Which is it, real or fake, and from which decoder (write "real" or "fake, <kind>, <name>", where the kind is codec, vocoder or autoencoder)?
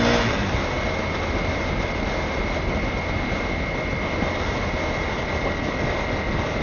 real